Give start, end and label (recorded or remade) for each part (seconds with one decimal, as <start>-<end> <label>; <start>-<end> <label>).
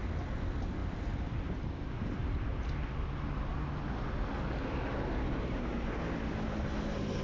0.0-7.2 recorded